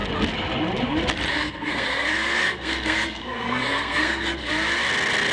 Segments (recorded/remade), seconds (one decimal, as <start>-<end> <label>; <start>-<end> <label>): 0.0-1.3 recorded; 1.3-4.5 remade; 4.5-5.3 recorded